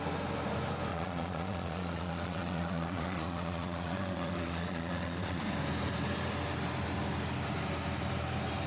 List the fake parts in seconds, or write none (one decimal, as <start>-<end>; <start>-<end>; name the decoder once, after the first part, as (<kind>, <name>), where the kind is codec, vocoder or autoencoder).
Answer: 0.9-5.4 (vocoder, Vocos)